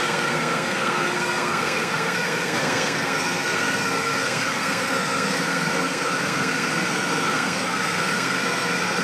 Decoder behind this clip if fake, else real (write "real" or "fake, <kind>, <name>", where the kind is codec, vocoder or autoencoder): fake, codec, SNAC